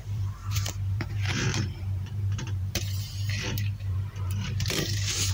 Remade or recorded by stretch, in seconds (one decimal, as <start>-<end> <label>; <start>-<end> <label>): 0.0-5.3 remade